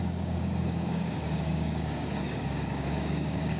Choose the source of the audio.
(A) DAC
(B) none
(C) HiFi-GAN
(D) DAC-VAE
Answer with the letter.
A